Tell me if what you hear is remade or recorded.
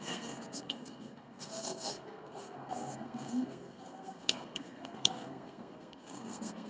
remade